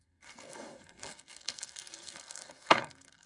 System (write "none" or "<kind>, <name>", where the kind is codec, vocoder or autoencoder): codec, SNAC